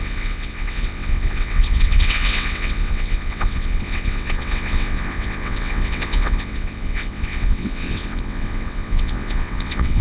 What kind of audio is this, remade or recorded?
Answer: remade